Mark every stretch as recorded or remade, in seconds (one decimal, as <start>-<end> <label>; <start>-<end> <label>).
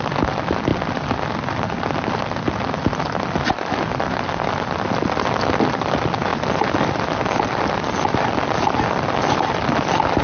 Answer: 0.0-10.2 recorded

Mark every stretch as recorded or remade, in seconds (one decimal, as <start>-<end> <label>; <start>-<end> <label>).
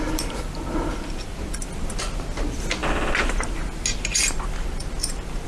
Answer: 0.0-5.5 recorded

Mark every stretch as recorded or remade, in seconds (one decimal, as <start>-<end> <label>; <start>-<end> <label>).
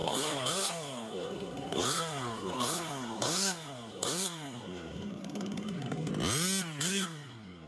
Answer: 0.0-6.1 remade; 6.1-6.8 recorded; 6.8-7.7 remade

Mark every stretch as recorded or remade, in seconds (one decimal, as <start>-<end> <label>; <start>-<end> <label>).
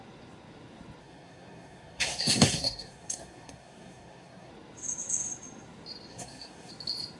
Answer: 0.0-1.0 recorded; 1.0-4.5 remade; 4.5-6.1 recorded; 6.1-6.7 remade; 6.7-7.2 recorded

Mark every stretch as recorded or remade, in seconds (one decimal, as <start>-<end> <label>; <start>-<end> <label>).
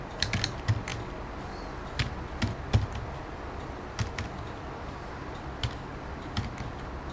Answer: 0.0-7.1 recorded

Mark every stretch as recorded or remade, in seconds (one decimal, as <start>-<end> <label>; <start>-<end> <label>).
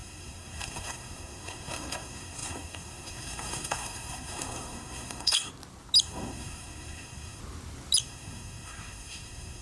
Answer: 0.0-5.5 remade; 5.5-6.0 recorded; 6.0-7.4 remade; 7.4-8.0 recorded; 8.0-9.6 remade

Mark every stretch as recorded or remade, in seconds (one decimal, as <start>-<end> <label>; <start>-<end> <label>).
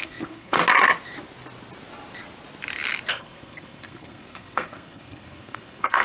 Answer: 0.0-0.6 remade; 0.6-3.1 recorded; 3.1-6.0 remade